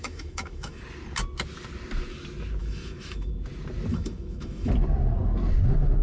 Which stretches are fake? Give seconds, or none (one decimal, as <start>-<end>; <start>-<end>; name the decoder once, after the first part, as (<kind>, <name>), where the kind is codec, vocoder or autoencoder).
0.0-0.8 (autoencoder, DAC-VAE); 2.6-3.3; 3.9-4.7

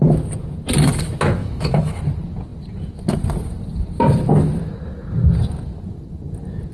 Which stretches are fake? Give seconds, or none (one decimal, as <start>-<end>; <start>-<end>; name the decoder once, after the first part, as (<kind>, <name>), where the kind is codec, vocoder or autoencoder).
1.4-2.0 (autoencoder, DAC-VAE)

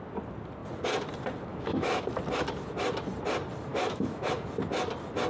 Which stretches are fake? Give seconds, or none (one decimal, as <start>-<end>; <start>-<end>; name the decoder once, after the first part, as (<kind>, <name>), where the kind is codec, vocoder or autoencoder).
1.5-2.0 (autoencoder, DAC-VAE); 3.7-4.3

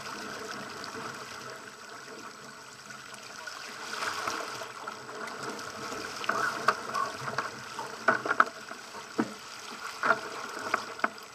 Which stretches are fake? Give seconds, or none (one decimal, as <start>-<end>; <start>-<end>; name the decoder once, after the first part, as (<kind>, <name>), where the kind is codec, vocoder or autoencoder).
none

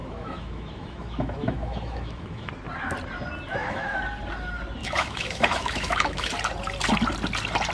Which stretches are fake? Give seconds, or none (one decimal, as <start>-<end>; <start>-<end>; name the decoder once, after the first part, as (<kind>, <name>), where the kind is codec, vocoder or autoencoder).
0.0-2.5 (autoencoder, DAC-VAE); 3.5-4.0; 4.8-6.3

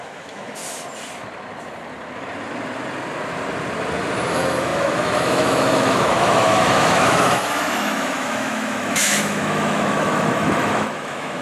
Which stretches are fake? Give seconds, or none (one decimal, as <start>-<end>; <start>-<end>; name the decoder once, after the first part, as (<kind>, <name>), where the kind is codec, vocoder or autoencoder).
0.0-0.6 (autoencoder, DAC-VAE); 4.3-11.4